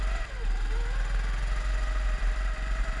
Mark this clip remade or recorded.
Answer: recorded